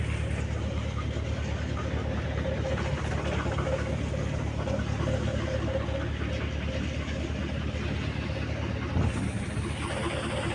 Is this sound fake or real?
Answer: real